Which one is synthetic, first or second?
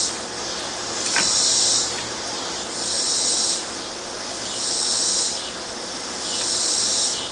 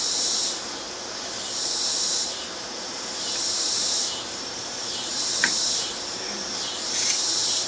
second